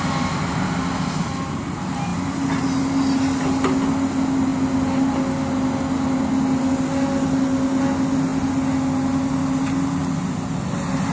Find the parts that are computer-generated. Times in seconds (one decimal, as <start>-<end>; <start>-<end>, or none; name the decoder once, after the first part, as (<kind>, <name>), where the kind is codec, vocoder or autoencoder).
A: none